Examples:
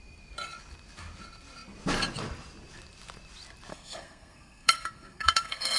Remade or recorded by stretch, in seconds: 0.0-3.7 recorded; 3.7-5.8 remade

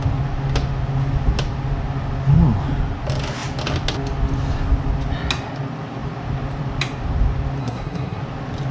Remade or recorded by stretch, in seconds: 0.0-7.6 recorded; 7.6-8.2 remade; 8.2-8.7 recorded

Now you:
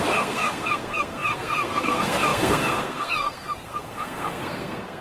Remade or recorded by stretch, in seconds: 0.0-5.0 remade

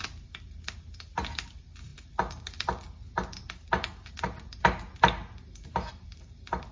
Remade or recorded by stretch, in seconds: 0.0-6.7 recorded

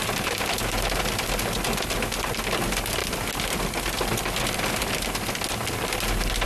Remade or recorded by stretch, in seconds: 0.0-6.5 recorded

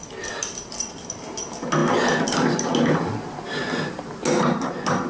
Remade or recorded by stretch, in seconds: 0.0-5.1 recorded

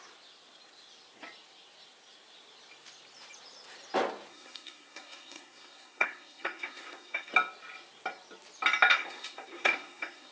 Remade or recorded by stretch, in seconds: 0.0-4.3 recorded; 4.3-7.3 remade; 7.3-8.9 recorded; 8.9-10.3 remade